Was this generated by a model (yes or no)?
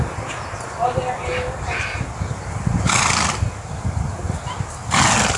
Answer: no